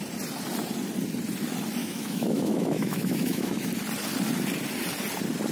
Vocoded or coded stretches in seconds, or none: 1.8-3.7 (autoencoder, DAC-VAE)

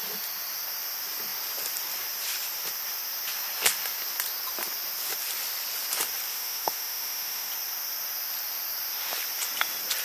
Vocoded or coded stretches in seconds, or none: 6.3-7.5 (autoencoder, DAC-VAE)